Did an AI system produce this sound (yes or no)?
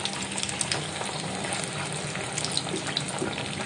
no